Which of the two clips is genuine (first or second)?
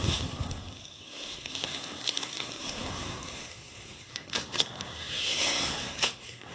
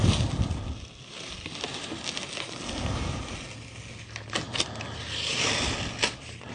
second